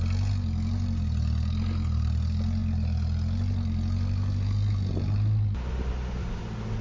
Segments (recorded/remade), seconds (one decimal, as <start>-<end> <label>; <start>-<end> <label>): 0.0-6.8 recorded